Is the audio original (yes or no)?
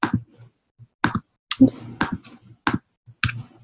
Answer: yes